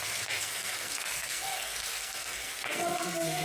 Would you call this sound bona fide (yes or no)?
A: no